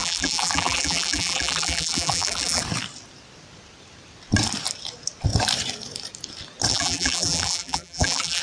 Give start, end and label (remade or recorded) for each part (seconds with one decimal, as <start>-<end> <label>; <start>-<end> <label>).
0.0-2.6 remade; 2.6-6.7 recorded; 6.7-8.4 remade